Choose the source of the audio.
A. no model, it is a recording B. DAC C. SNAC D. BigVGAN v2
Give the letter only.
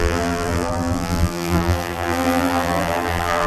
D